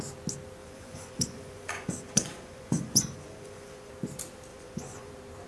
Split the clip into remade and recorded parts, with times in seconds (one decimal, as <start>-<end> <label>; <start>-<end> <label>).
0.0-0.6 recorded; 0.6-3.9 remade; 3.9-4.5 recorded; 4.5-5.1 remade; 5.1-5.5 recorded